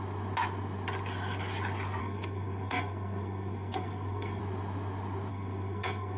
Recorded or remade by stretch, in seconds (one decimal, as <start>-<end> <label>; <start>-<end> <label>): 0.0-2.0 recorded; 2.0-4.4 remade; 4.4-5.3 recorded; 5.3-6.2 remade